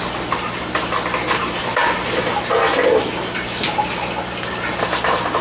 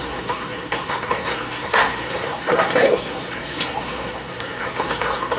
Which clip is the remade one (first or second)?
second